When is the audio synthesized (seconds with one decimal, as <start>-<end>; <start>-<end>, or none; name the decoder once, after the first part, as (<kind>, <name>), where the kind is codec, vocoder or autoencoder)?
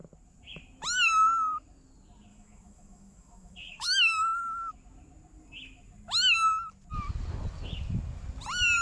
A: 2.3-4.7 (autoencoder, DAC-VAE)